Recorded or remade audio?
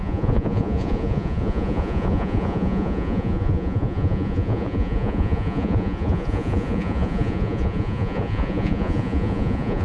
remade